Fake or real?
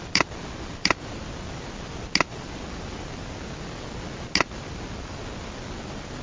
real